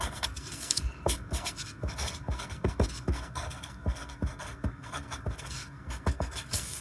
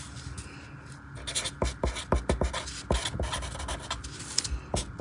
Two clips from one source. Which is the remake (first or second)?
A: first